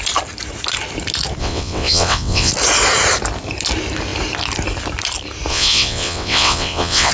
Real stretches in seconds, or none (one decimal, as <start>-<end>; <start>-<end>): 0.0-1.4; 2.5-5.5